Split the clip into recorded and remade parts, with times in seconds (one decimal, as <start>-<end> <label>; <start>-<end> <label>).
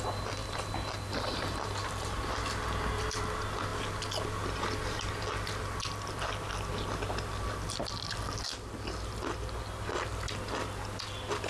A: 0.0-11.5 recorded